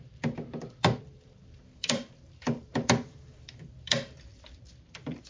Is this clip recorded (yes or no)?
no